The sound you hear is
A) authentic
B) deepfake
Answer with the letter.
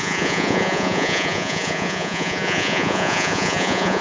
B